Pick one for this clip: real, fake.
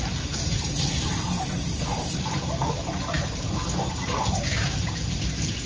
fake